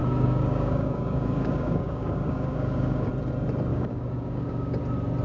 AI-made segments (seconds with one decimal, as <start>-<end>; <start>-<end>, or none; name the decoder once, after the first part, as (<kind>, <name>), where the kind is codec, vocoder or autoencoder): 0.0-3.1 (codec, DAC); 3.7-4.8